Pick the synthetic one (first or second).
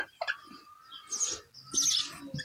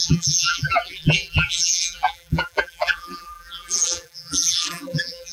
second